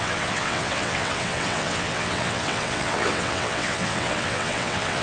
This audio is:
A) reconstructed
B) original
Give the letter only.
A